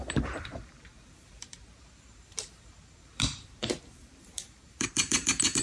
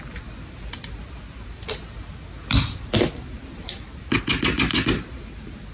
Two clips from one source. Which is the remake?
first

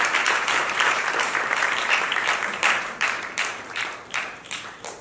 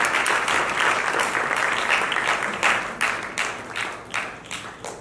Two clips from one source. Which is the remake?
first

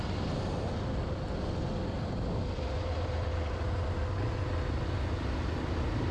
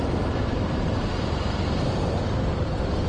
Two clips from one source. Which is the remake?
second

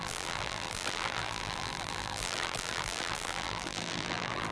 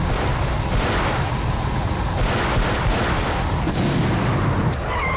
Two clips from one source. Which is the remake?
first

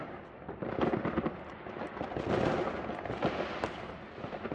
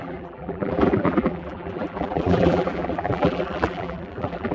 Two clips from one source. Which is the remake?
second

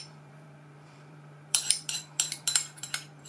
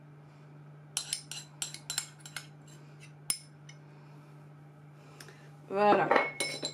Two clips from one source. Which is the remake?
first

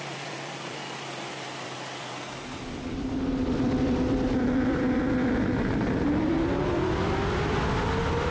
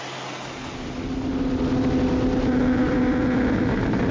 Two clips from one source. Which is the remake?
first